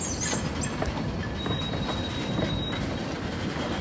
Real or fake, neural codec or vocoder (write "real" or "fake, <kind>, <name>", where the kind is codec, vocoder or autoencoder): real